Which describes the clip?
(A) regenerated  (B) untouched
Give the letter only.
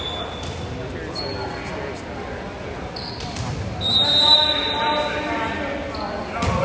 B